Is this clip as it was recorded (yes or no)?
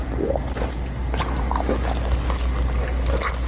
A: yes